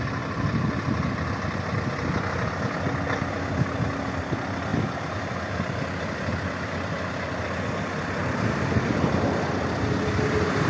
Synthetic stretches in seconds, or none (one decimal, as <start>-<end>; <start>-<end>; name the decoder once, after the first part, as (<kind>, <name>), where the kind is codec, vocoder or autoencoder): none